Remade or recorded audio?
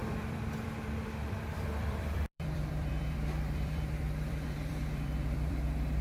remade